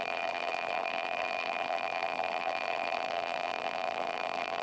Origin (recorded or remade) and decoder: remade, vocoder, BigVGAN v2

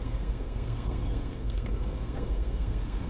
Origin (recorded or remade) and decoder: remade, codec, SNAC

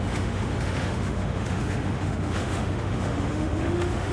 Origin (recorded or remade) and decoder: remade, autoencoder, DAC-VAE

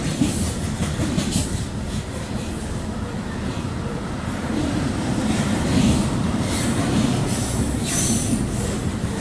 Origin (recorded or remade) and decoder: remade, vocoder, BigVGAN v2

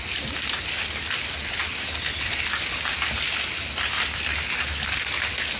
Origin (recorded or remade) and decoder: recorded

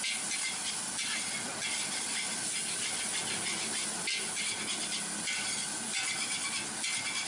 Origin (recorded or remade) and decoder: recorded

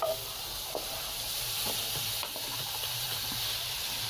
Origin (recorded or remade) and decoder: remade, vocoder, BigVGAN v2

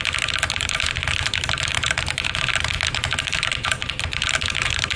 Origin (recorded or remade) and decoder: recorded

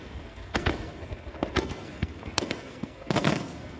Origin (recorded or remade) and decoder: remade, codec, SNAC